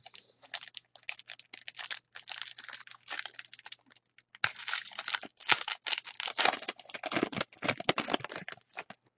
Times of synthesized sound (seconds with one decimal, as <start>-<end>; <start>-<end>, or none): 5.3-5.8